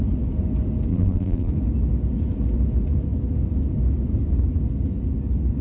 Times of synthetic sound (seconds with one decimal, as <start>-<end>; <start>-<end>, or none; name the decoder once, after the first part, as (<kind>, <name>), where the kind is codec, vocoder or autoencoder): 0.9-1.5 (vocoder, BigVGAN v2)